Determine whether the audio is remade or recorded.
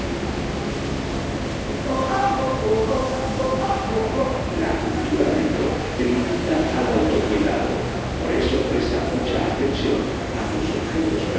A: recorded